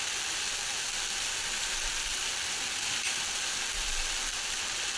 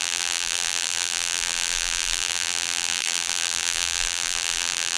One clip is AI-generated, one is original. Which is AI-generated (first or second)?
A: second